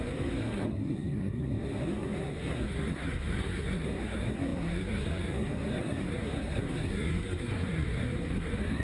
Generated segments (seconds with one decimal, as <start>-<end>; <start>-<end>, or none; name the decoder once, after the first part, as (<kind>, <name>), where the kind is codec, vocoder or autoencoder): 0.0-8.8 (codec, SNAC)